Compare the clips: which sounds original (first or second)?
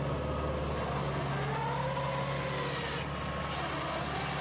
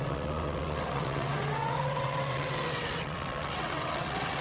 first